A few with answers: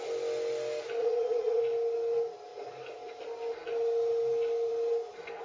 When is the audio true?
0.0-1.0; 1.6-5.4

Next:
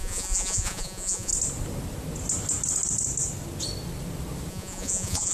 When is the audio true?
1.3-4.5

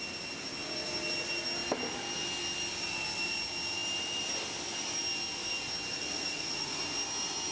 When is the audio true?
0.0-5.9; 6.8-7.5

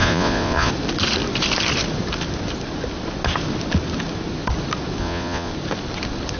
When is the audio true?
0.7-5.0; 5.5-6.4

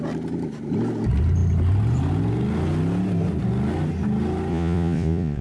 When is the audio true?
0.0-4.5

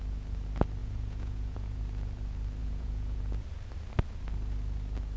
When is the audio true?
0.0-0.8; 1.8-2.6; 3.2-5.2

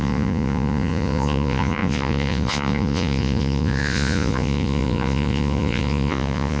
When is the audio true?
none